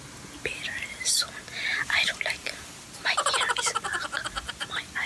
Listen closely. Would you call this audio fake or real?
real